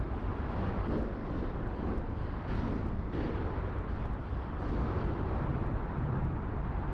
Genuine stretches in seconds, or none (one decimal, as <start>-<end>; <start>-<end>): 0.0-1.2; 2.2-4.2; 5.9-6.9